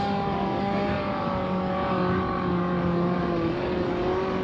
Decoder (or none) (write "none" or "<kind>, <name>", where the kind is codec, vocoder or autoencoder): codec, DAC